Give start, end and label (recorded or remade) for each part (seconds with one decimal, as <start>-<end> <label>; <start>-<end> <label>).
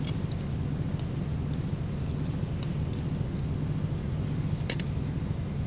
0.0-5.7 recorded